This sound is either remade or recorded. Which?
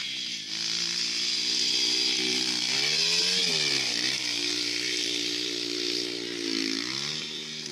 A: recorded